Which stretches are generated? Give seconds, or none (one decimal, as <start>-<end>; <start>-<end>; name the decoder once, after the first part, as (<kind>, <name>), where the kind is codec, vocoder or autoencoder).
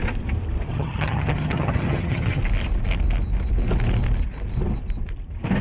0.7-2.4 (vocoder, HiFi-GAN)